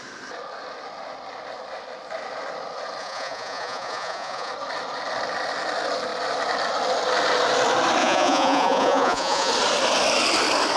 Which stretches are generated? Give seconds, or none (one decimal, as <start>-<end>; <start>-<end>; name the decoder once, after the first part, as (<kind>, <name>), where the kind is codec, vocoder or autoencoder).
3.0-4.5 (vocoder, Vocos); 8.0-9.5